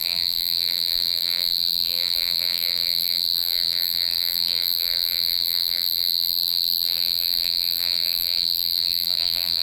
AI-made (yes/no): yes